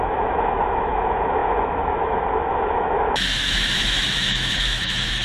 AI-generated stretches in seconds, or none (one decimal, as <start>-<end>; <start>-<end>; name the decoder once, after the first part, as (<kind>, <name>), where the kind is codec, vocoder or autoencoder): 0.0-5.2 (autoencoder, DAC-VAE)